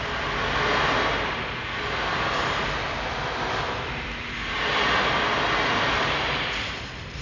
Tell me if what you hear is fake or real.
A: real